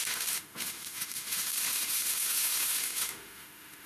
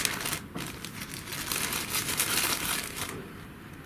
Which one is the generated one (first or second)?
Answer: first